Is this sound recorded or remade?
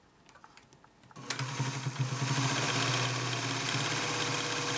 recorded